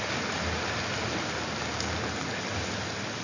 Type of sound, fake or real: real